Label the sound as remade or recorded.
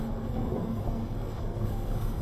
remade